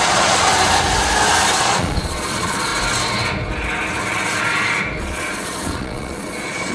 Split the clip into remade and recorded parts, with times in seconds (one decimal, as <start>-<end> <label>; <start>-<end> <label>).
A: 0.0-0.5 remade; 0.5-1.6 recorded; 1.6-2.7 remade; 2.7-5.0 recorded; 5.0-6.7 remade